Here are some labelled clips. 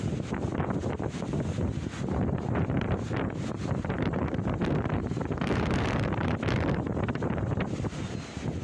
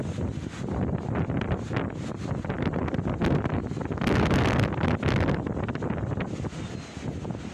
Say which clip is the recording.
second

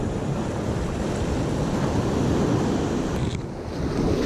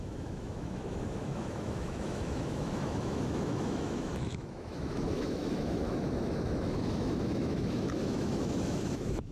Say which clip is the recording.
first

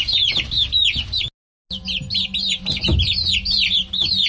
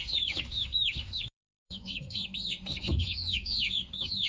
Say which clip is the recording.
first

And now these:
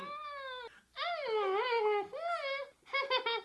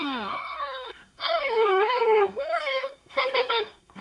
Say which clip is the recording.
first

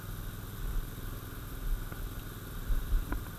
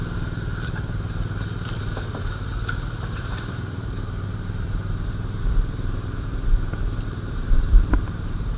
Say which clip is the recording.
first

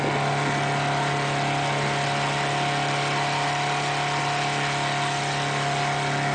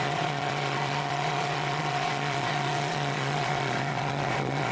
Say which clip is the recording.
first